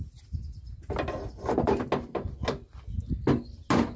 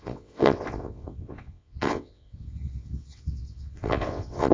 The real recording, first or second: first